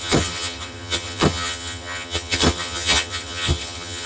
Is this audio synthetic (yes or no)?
yes